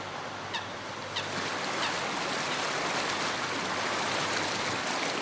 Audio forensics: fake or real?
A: real